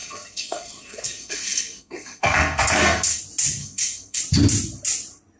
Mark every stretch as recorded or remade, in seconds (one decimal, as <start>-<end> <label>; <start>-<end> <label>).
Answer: 0.0-3.2 remade; 3.2-3.6 recorded; 3.6-4.2 remade; 4.2-5.4 recorded

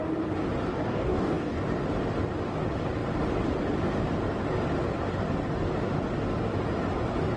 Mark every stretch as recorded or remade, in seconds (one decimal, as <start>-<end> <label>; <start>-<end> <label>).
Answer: 0.0-0.7 recorded; 0.7-1.6 remade; 1.6-7.4 recorded

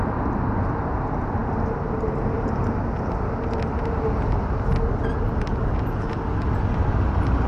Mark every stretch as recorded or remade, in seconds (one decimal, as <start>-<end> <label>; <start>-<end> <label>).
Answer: 0.0-7.5 recorded

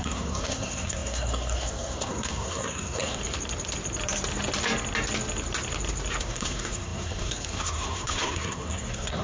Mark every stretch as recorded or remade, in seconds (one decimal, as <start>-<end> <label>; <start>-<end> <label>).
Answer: 0.0-3.2 remade; 3.2-6.2 recorded; 6.2-9.2 remade

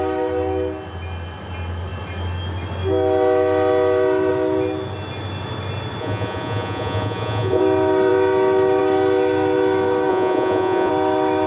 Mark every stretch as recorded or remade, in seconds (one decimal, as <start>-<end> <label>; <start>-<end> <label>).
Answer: 0.0-6.0 recorded; 6.0-7.6 remade; 7.6-10.1 recorded; 10.1-10.9 remade; 10.9-11.5 recorded

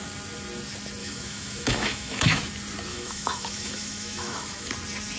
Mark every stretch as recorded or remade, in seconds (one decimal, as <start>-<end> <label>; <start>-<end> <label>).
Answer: 0.0-1.0 recorded; 1.0-2.4 remade; 2.4-2.9 recorded; 2.9-4.7 remade; 4.7-5.2 recorded